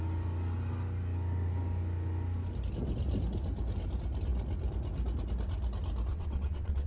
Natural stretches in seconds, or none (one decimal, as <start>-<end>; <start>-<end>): 0.0-6.1